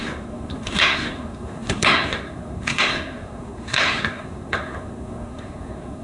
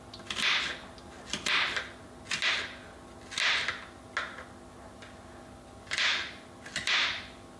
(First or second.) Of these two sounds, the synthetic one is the first